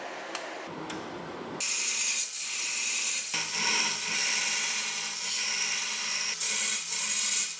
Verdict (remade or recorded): recorded